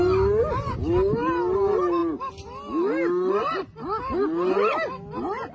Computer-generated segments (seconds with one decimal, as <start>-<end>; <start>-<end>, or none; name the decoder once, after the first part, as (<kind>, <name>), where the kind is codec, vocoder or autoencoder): none